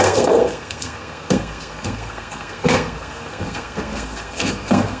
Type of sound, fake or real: fake